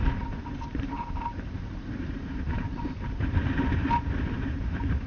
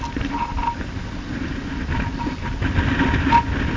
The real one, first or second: second